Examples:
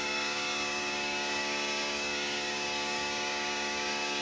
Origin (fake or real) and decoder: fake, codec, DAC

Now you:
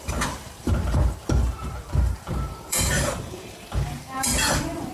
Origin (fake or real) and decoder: fake, vocoder, BigVGAN v2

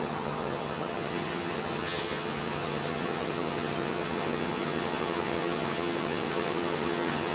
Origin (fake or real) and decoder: fake, vocoder, HiFi-GAN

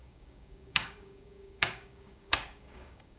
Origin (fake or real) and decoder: fake, codec, DAC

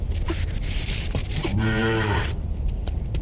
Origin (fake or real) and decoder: fake, vocoder, BigVGAN v2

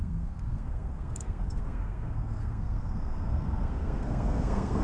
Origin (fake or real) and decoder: fake, codec, SNAC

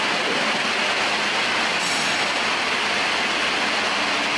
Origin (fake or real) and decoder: real